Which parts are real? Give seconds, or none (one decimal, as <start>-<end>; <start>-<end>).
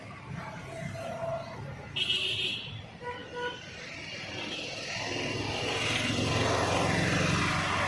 0.0-7.9